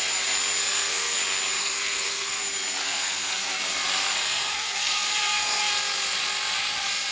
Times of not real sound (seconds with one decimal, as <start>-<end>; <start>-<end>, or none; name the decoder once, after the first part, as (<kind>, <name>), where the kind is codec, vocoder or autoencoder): 0.6-1.2 (codec, SNAC); 1.6-2.4; 2.8-3.6; 4.2-5.7